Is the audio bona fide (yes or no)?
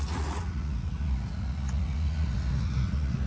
no